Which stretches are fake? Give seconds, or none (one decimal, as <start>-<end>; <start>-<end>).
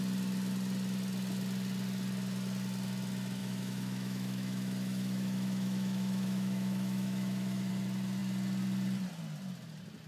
3.4-7.7